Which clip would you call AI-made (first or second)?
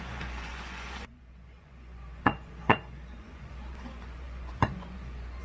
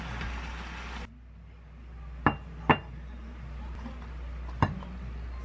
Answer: first